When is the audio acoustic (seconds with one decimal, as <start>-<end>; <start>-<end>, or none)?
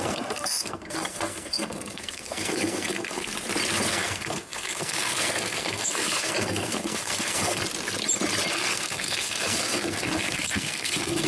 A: 3.3-3.9; 7.6-8.5